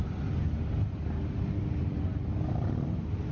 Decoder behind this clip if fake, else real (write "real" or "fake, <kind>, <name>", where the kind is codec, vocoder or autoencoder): real